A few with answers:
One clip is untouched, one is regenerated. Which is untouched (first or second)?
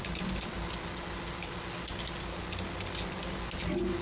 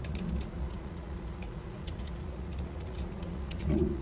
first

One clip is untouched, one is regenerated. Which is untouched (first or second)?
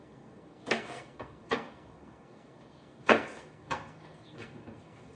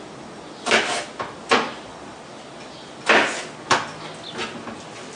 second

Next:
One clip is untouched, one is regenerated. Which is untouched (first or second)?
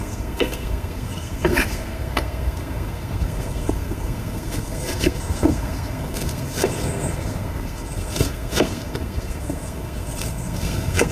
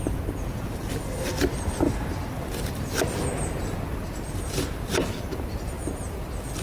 second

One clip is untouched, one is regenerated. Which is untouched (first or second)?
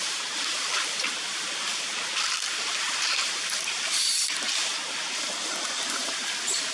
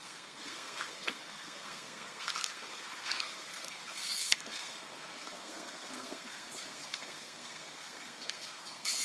first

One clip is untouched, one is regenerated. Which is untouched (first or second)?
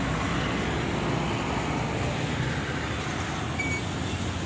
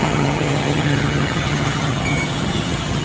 first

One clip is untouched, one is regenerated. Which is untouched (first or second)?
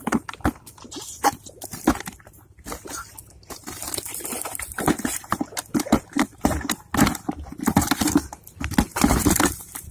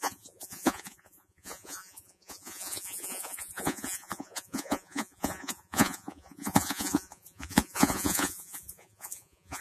first